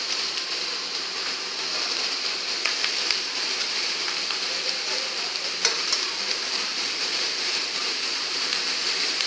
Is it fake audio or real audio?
fake